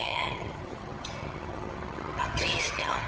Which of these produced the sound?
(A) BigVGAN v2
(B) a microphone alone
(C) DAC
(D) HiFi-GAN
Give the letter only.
D